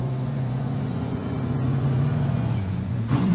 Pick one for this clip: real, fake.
fake